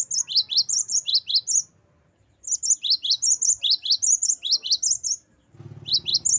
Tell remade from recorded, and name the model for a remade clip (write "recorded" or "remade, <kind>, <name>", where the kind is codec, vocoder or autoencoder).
recorded